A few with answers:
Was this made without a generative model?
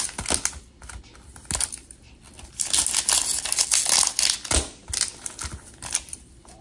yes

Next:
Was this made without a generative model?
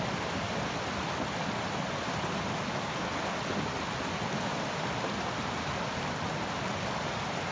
yes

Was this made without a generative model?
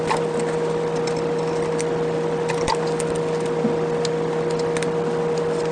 yes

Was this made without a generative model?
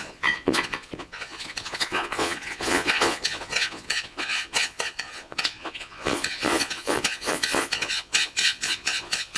no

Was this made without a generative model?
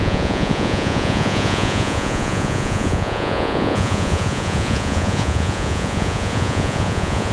no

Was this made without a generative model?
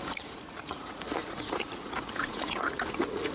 no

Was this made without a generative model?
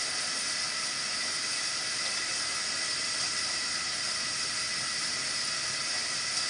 yes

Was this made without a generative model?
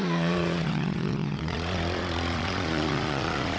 no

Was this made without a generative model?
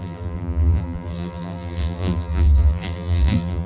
no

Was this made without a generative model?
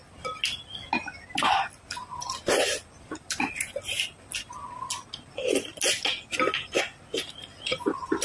yes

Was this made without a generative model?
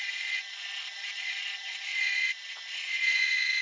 no